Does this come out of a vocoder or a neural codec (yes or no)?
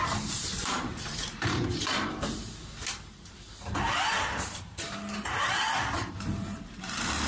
yes